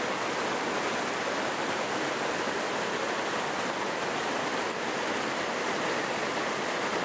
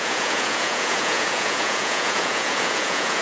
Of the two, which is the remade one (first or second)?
second